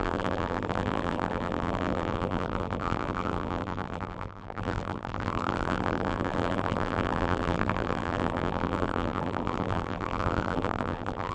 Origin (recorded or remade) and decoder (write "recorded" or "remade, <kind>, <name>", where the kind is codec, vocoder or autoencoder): remade, vocoder, BigVGAN v2